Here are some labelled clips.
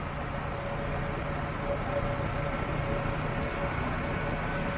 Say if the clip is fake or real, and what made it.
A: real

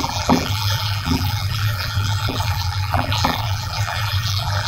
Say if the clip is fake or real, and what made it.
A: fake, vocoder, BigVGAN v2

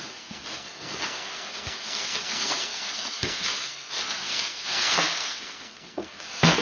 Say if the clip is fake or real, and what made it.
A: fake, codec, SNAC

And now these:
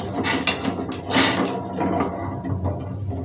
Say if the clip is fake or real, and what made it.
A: real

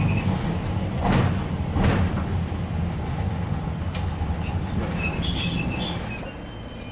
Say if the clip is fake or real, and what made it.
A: real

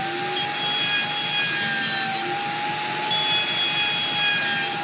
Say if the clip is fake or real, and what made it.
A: real